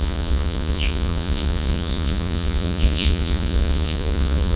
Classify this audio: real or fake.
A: fake